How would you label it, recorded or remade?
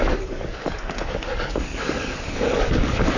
remade